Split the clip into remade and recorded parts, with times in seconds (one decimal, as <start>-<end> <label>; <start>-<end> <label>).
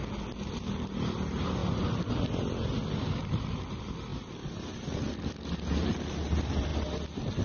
0.0-1.6 recorded; 1.6-3.5 remade; 3.5-6.7 recorded; 6.7-7.4 remade